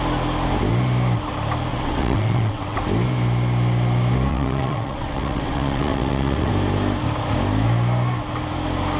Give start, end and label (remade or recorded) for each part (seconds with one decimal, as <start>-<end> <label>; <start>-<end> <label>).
0.0-1.7 recorded; 1.7-2.8 remade; 2.8-4.3 recorded; 4.3-6.5 remade; 6.5-9.0 recorded